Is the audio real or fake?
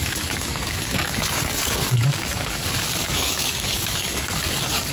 fake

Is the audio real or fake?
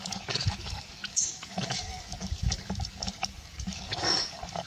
fake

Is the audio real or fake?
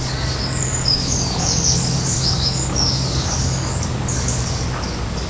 fake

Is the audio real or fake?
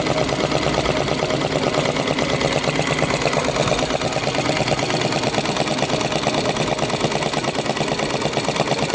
real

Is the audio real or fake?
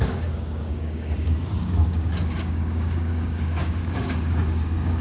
fake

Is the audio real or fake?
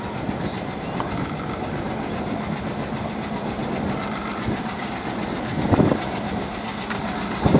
real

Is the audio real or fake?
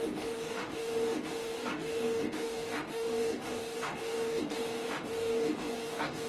fake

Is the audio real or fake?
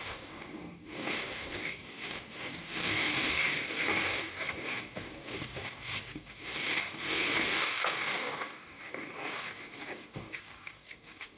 fake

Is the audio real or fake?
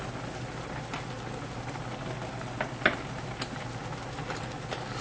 real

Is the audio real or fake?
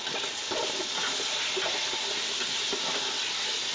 real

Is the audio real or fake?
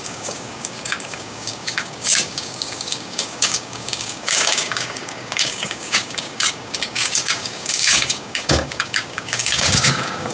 fake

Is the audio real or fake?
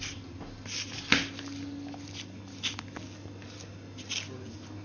real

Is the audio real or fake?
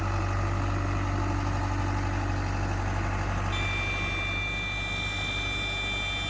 real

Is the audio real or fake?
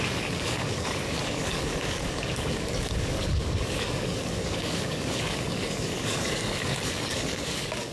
fake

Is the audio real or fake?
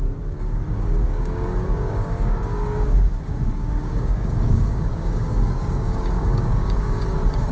fake